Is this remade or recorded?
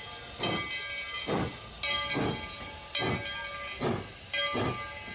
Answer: recorded